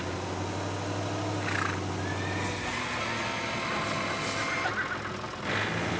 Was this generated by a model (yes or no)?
no